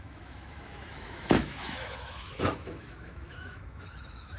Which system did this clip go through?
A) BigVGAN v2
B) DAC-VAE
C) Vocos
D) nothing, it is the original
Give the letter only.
B